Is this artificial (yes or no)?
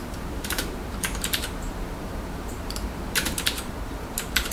yes